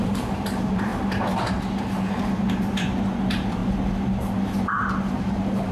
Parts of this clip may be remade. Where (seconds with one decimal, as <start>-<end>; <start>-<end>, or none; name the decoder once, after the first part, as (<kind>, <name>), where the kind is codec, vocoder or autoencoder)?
0.0-3.6 (vocoder, BigVGAN v2); 5.2-5.7